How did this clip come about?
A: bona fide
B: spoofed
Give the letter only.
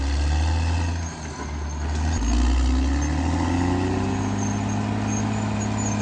A